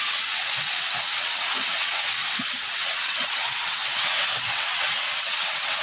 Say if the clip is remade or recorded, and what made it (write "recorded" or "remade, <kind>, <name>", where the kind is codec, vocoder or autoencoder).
remade, vocoder, WaveNeXt